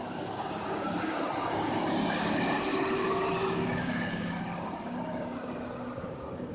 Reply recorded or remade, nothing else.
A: remade